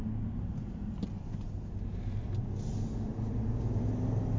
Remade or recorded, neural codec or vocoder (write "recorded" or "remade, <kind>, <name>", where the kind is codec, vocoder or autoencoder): recorded